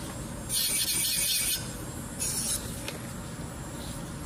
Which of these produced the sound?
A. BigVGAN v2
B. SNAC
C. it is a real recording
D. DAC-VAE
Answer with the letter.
C